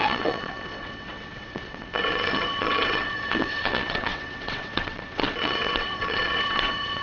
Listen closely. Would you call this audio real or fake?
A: fake